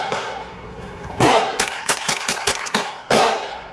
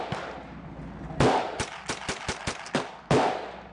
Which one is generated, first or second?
first